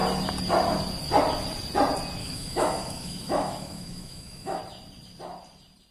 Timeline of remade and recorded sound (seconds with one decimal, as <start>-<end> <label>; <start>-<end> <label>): 0.0-2.2 recorded; 2.2-4.6 remade; 4.6-5.9 recorded